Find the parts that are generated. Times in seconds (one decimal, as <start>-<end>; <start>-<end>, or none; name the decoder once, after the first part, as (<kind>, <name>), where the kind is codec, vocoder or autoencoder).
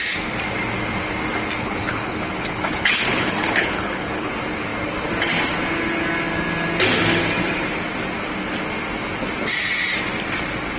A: 1.6-4.3 (codec, HILCodec)